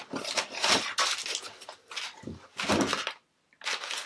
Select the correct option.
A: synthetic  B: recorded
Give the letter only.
B